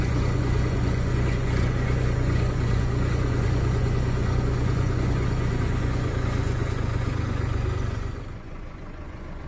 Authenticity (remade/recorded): remade